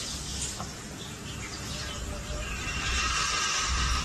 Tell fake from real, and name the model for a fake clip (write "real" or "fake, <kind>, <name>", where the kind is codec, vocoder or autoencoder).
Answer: real